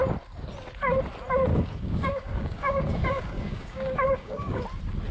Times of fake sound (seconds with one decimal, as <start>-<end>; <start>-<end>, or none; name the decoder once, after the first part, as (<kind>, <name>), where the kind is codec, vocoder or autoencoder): 1.5-4.6 (codec, DAC)